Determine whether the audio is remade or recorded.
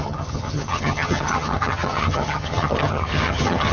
remade